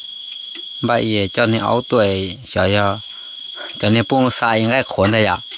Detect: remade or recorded remade